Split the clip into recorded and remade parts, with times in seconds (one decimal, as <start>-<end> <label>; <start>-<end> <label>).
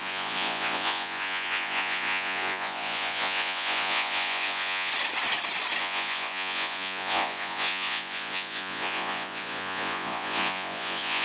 0.0-4.9 remade; 4.9-5.8 recorded; 5.8-11.2 remade